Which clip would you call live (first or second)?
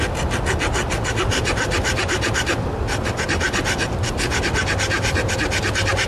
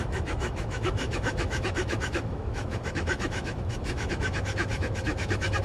first